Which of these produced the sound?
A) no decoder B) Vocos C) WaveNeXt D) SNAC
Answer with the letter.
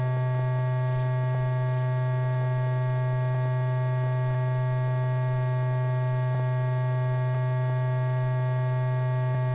A